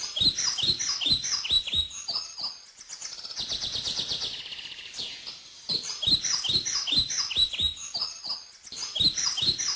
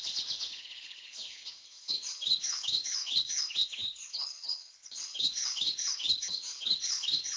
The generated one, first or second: second